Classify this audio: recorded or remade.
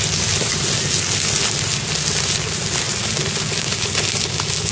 recorded